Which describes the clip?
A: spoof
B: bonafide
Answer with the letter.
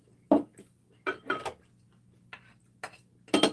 B